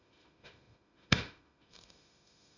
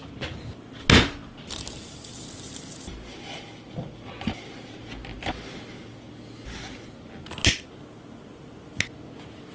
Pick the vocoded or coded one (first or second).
first